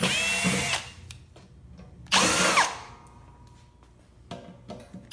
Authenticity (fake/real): real